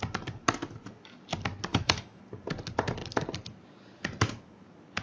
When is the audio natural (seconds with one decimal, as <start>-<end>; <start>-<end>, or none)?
0.0-1.7; 2.2-5.0